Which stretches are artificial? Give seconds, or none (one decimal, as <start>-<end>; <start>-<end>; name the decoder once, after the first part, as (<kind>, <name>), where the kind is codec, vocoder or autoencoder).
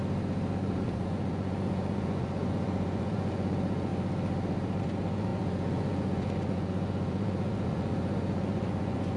0.6-3.9 (vocoder, Vocos); 4.8-9.2